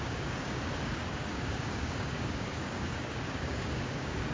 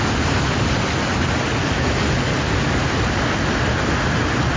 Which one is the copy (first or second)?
first